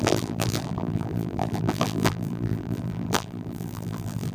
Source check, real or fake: fake